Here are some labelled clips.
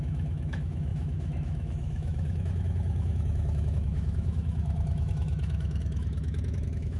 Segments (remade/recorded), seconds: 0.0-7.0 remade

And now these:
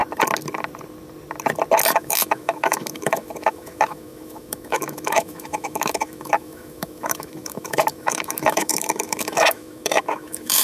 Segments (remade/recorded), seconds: 0.0-1.9 recorded; 1.9-10.6 remade

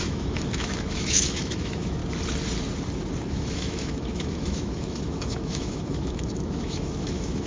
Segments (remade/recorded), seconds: 0.0-2.0 remade; 2.0-3.3 recorded; 3.3-7.5 remade